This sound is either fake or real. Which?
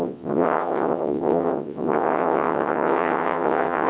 fake